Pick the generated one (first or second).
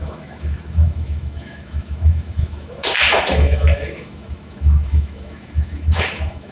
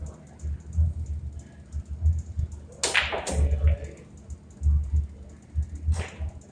first